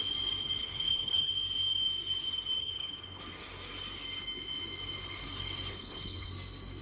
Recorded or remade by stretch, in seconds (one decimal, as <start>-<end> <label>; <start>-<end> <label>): 0.0-0.6 recorded; 0.6-1.3 remade; 1.3-2.6 recorded; 2.6-3.2 remade; 3.2-5.7 recorded; 5.7-6.3 remade; 6.3-6.8 recorded